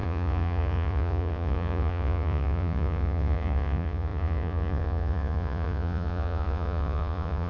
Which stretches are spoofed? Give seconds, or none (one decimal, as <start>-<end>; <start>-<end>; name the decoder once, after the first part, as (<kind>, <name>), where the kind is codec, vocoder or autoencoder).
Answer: 0.0-7.5 (vocoder, Vocos)